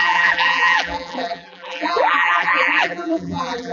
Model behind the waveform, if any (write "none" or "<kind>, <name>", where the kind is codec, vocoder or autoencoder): vocoder, BigVGAN v2